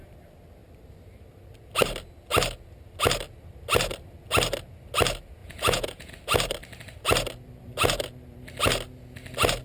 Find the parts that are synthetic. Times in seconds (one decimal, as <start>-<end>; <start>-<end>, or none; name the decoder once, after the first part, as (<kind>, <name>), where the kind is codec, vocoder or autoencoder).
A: 5.4-6.1 (vocoder, Vocos)